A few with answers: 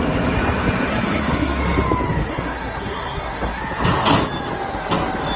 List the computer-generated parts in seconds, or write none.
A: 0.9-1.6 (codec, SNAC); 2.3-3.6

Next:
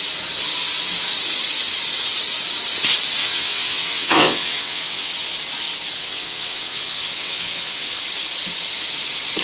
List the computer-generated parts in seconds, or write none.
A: 3.2-5.1 (vocoder, WaveNeXt); 6.0-8.0

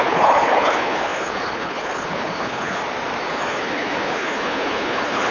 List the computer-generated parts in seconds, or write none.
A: 0.0-2.8 (codec, HILCodec); 3.3-5.3